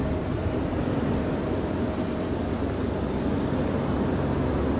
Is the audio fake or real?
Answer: real